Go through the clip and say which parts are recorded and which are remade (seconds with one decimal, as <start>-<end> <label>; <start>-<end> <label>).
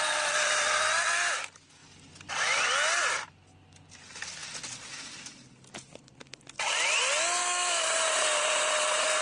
0.0-7.4 recorded; 7.4-7.9 remade; 7.9-9.2 recorded